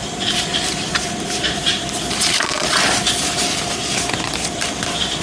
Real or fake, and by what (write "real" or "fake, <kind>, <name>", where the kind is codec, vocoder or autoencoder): fake, vocoder, BigVGAN v2